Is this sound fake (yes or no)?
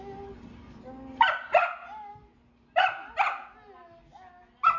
no